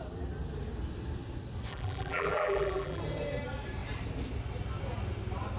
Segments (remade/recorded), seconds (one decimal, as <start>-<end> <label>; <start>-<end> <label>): 0.0-1.7 recorded; 1.7-3.0 remade; 3.0-5.6 recorded